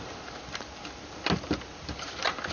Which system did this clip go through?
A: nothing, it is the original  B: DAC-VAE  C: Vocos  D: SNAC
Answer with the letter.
A